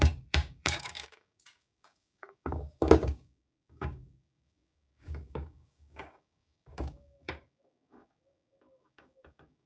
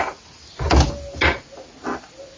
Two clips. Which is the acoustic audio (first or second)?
second